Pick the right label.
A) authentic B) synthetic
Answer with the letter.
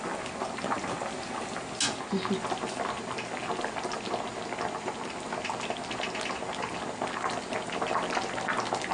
A